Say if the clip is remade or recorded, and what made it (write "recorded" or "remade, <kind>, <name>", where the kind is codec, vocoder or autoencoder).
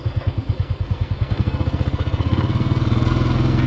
remade, codec, SNAC